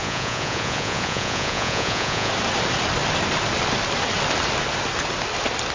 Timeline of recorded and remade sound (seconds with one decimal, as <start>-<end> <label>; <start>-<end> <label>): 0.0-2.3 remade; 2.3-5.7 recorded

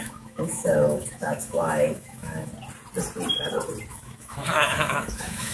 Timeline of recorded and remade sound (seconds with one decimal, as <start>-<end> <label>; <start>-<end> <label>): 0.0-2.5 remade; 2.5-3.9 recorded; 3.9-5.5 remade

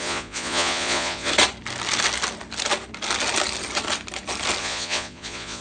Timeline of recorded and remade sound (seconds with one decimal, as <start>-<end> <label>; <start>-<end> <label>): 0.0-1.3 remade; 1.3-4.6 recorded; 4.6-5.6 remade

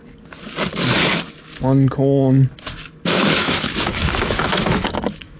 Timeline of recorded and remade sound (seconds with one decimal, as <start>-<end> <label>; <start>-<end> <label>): 0.0-3.2 recorded; 3.2-5.4 remade

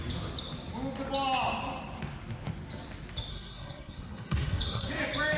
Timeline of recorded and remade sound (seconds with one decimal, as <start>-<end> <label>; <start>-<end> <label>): 0.0-3.3 recorded; 3.3-4.9 remade; 4.9-5.4 recorded

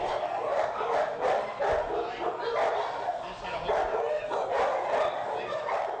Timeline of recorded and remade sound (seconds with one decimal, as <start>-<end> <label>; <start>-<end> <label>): 0.0-0.5 recorded; 0.5-1.3 remade; 1.3-6.0 recorded

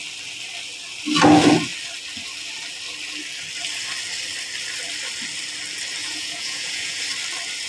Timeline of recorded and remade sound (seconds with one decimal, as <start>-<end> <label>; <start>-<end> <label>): 0.0-6.0 recorded; 6.0-7.0 remade; 7.0-7.7 recorded

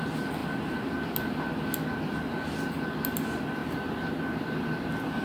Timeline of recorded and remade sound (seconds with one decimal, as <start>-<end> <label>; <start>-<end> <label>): 0.0-5.2 recorded